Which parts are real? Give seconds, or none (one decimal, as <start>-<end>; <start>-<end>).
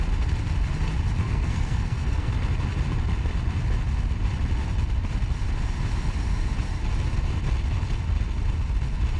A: 0.0-1.2; 2.3-9.2